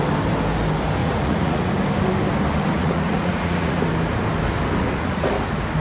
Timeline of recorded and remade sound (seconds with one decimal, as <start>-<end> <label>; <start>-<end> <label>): 0.0-1.0 recorded; 1.0-1.7 remade; 1.7-2.7 recorded; 2.7-3.8 remade; 3.8-4.8 recorded; 4.8-5.3 remade; 5.3-5.8 recorded